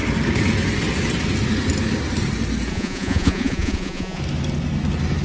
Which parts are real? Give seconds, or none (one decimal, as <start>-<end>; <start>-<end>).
0.0-2.7; 4.2-5.2